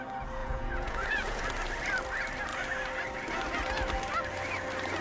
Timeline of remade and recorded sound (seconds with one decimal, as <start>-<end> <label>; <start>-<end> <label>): 0.0-0.4 recorded; 0.4-1.4 remade; 1.4-5.0 recorded